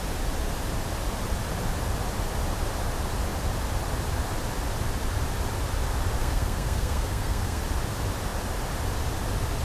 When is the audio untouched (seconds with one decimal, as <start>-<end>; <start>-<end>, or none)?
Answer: 0.0-6.2; 7.6-9.6